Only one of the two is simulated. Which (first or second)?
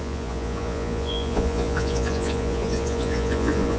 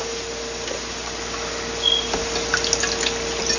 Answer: first